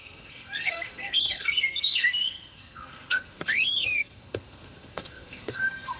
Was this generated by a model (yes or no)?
yes